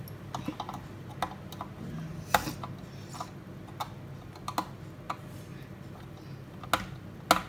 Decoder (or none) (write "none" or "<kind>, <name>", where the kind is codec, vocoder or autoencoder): none